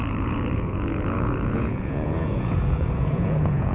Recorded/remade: remade